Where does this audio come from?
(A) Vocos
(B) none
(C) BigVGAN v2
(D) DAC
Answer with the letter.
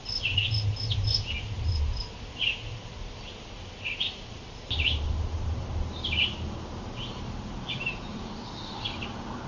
B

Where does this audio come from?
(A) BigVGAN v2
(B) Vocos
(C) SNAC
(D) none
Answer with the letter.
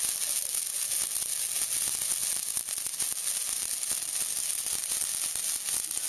D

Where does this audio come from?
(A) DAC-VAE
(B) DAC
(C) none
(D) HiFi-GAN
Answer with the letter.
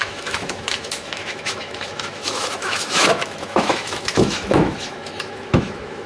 A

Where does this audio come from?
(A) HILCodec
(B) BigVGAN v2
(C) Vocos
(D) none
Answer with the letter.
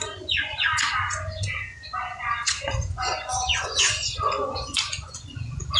C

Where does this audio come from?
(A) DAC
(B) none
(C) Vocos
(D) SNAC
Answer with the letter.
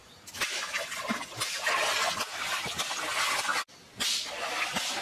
B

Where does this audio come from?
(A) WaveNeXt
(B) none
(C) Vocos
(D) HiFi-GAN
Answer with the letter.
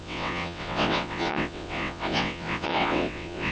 A